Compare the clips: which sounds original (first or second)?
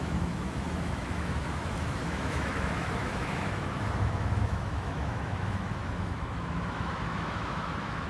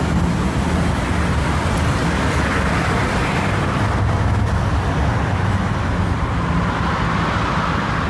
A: second